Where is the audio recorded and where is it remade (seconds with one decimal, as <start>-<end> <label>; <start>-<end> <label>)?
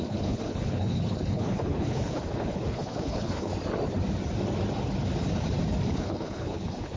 0.0-3.5 remade; 3.5-5.9 recorded; 5.9-7.0 remade